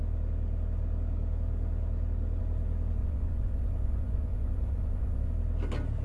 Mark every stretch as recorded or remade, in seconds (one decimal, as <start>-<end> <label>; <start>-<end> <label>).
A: 0.0-3.0 recorded; 3.0-5.3 remade; 5.3-6.0 recorded